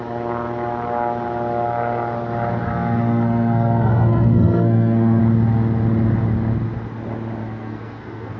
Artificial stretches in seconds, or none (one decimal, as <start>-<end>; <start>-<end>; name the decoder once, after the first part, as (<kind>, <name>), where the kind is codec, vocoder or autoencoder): 2.7-5.2 (codec, SNAC); 7.4-8.4